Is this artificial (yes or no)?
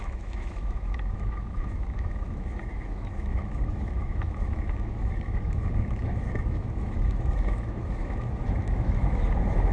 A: yes